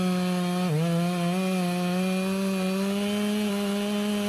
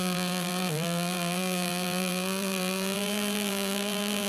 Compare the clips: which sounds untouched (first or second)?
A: first